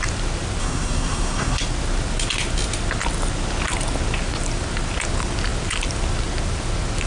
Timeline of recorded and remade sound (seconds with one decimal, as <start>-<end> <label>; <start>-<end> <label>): 0.0-0.6 recorded; 0.6-1.6 remade; 1.6-7.1 recorded